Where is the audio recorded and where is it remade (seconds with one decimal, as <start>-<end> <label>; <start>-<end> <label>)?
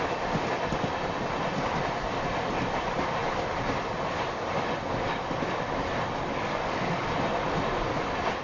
0.0-6.3 recorded; 6.3-7.1 remade; 7.1-8.4 recorded